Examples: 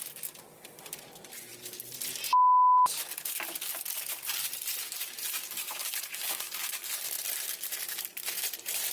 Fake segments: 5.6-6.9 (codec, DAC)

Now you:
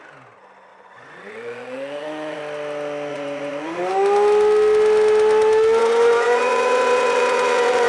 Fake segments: 0.7-2.4 (vocoder, Vocos); 3.1-3.9; 5.8-7.9